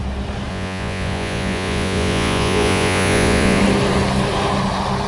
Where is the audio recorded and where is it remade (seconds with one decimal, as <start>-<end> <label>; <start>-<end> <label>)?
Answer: 0.0-0.5 recorded; 0.5-3.6 remade; 3.6-5.1 recorded